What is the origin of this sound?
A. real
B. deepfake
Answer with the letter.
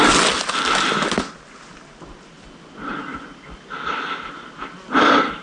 A